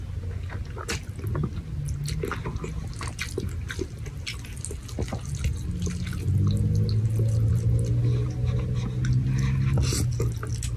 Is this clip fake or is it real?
real